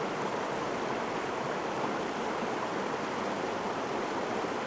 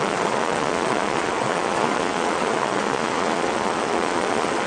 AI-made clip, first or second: second